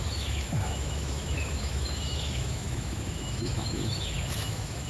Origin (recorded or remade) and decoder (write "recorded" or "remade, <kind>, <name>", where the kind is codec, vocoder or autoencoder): remade, autoencoder, DAC-VAE